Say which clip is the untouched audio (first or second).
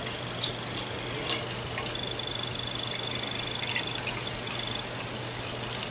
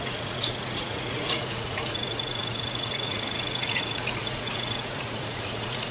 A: first